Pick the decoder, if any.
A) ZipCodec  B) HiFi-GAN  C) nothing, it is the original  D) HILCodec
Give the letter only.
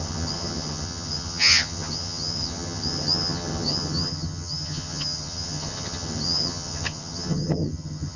B